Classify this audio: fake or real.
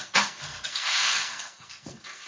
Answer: fake